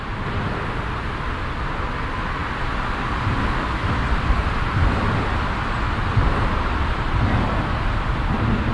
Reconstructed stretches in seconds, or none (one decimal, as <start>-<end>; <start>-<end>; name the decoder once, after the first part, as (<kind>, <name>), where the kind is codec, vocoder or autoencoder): none